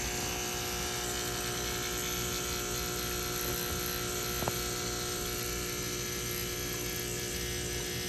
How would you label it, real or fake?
real